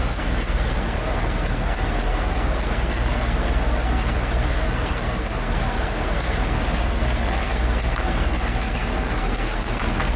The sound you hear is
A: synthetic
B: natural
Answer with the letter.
A